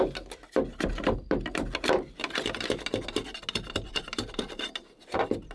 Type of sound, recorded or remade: recorded